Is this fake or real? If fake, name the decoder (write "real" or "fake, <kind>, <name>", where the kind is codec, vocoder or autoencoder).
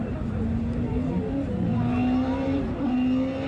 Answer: real